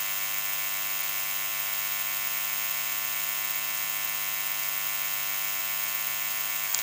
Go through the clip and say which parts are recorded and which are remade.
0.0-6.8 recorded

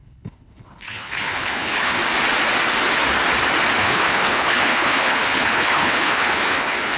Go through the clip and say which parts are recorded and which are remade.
0.0-2.0 remade; 2.0-3.8 recorded; 3.8-7.0 remade

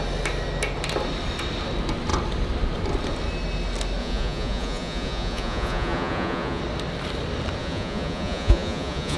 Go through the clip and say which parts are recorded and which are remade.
0.0-4.0 recorded; 4.0-6.6 remade; 6.6-7.6 recorded; 7.6-9.2 remade

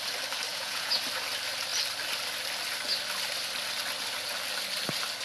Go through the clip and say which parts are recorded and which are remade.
0.0-0.5 recorded; 0.5-1.0 remade; 1.0-5.2 recorded

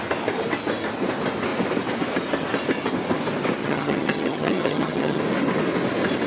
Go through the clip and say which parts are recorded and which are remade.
0.0-3.6 recorded; 3.6-5.2 remade; 5.2-6.3 recorded

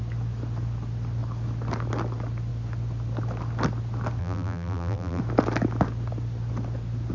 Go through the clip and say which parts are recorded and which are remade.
0.0-4.2 recorded; 4.2-5.2 remade; 5.2-7.1 recorded

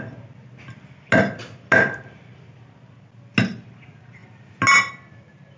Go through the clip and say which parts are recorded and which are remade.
0.0-5.6 recorded

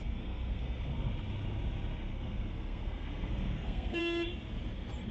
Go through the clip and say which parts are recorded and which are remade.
0.0-1.1 remade; 1.1-2.1 recorded; 2.1-4.0 remade; 4.0-5.1 recorded